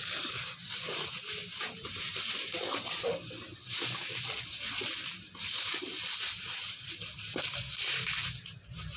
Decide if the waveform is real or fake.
fake